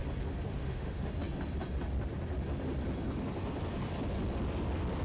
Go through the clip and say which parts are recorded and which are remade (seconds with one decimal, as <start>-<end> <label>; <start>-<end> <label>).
0.0-0.5 recorded; 0.5-1.1 remade; 1.1-5.0 recorded